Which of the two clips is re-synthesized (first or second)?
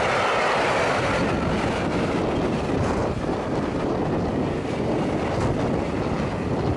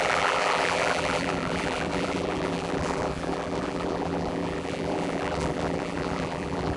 second